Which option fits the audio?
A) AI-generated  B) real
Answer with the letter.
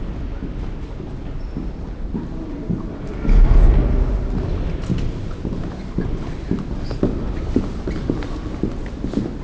B